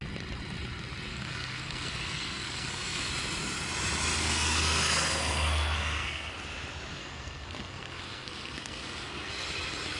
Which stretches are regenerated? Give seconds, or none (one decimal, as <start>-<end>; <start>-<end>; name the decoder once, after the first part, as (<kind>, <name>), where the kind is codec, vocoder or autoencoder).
1.1-3.1 (codec, SNAC); 4.2-6.3; 7.0-9.3